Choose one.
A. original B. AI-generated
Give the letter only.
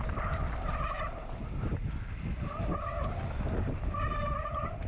B